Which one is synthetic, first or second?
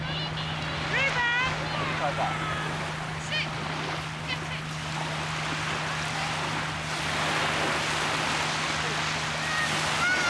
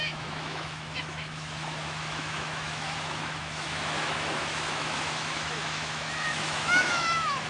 second